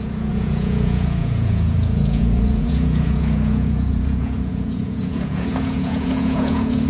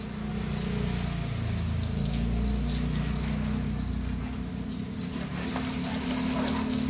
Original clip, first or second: second